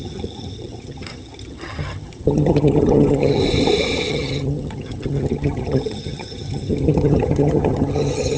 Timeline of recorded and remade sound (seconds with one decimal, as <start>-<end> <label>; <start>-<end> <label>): 0.0-3.4 remade; 3.4-4.1 recorded; 4.1-8.4 remade